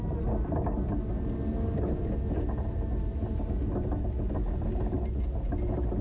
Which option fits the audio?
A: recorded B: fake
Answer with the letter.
A